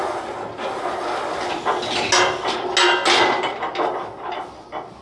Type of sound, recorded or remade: recorded